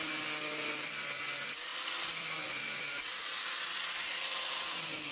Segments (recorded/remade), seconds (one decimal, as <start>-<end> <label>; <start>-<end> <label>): 0.0-5.1 recorded